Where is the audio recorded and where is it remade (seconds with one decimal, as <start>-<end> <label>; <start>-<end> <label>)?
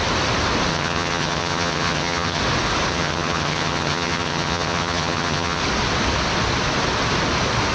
0.0-0.7 recorded; 0.7-2.4 remade; 2.4-2.9 recorded; 2.9-5.6 remade; 5.6-7.7 recorded